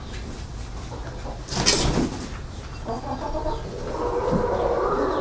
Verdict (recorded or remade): recorded